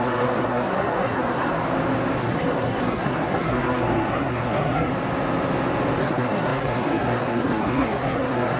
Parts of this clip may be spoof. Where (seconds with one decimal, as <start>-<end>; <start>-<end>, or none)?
0.0-1.5; 2.2-4.9; 6.0-8.6

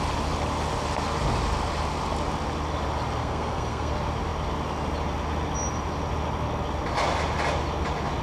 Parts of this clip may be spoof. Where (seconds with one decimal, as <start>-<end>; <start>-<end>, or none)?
3.2-3.9

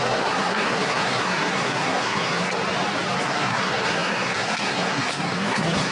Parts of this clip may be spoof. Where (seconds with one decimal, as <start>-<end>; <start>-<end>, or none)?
0.0-2.5; 3.2-5.9

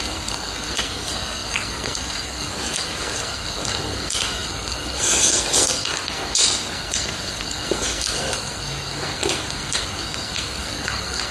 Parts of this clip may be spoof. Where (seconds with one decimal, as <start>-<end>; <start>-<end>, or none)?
0.0-11.3

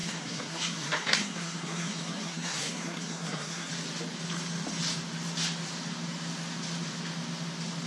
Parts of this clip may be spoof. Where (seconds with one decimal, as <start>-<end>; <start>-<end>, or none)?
0.0-3.7

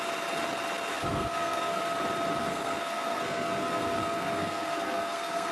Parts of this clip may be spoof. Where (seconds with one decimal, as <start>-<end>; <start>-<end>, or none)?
0.9-1.8; 2.4-5.5